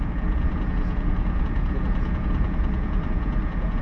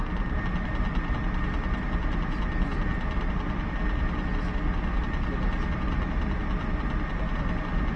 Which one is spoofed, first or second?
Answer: first